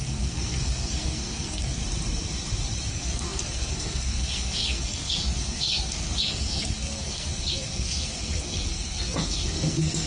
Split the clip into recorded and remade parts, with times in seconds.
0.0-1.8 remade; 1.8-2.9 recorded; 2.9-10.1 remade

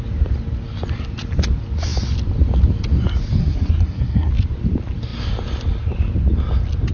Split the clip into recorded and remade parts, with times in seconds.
0.0-3.4 recorded; 3.4-4.3 remade; 4.3-6.9 recorded

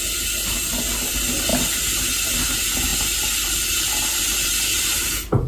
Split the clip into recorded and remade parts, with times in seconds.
0.0-5.5 recorded

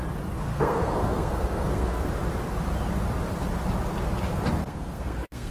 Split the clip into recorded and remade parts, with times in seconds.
0.0-0.5 recorded; 0.5-2.1 remade; 2.1-4.6 recorded; 4.6-5.5 remade

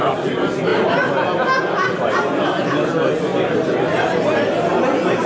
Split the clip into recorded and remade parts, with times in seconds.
0.0-5.3 recorded

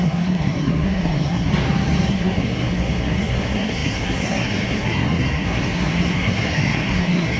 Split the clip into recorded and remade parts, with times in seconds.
0.0-1.5 remade; 1.5-2.1 recorded; 2.1-7.4 remade